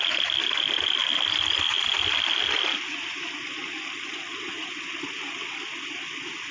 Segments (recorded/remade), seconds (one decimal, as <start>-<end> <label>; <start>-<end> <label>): 0.0-6.5 recorded

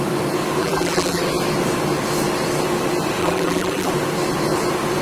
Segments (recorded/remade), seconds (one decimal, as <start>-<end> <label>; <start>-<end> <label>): 0.0-0.6 recorded; 0.6-1.2 remade; 1.2-3.2 recorded; 3.2-3.9 remade; 3.9-5.0 recorded

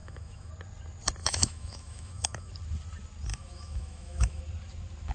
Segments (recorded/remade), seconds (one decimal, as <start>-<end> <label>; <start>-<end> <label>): 0.0-0.5 remade; 0.5-1.2 recorded; 1.2-2.5 remade; 2.5-3.3 recorded; 3.3-4.4 remade; 4.4-5.1 recorded

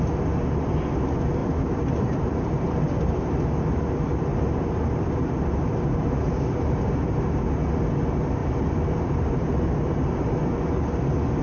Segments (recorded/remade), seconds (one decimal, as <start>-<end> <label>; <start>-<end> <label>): 0.0-1.4 recorded; 1.4-3.2 remade; 3.2-4.3 recorded; 4.3-7.2 remade; 7.2-8.4 recorded; 8.4-9.9 remade; 9.9-11.4 recorded

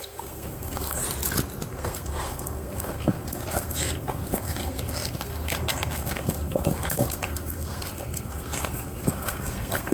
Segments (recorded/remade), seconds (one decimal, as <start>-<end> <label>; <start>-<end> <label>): 0.0-1.0 remade; 1.0-1.7 recorded; 1.7-9.9 remade